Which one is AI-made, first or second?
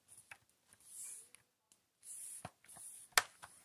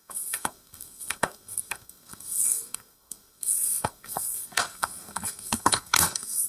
second